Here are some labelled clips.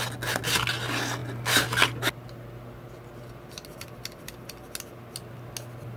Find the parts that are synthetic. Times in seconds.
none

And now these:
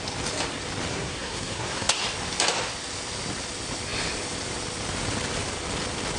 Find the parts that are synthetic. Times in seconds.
0.9-2.0 (codec, SNAC)

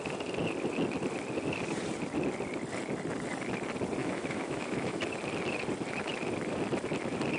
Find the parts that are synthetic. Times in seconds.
4.0-5.0 (autoencoder, DAC-VAE)

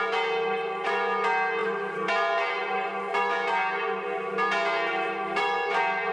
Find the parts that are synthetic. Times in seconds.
1.6-2.1 (vocoder, BigVGAN v2)